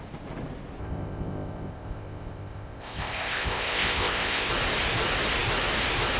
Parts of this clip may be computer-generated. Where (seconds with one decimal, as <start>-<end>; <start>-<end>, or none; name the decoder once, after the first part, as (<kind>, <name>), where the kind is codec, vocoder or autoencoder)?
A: 0.8-4.5 (codec, ZipCodec)

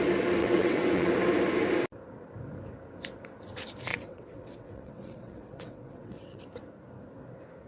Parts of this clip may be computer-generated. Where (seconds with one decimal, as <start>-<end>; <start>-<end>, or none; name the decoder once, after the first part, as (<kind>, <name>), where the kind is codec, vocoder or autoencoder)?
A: 0.4-1.1 (vocoder, WaveNeXt); 3.9-6.4